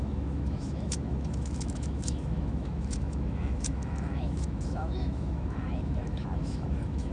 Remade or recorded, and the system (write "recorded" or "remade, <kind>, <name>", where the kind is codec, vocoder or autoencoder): remade, autoencoder, DAC-VAE